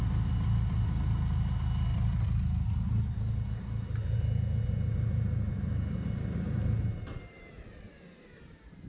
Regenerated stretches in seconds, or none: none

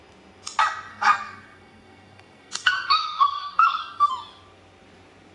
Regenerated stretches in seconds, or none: 0.9-4.1